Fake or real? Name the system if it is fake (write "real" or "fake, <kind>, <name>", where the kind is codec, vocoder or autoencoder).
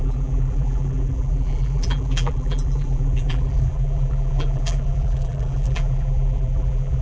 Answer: fake, vocoder, BigVGAN v2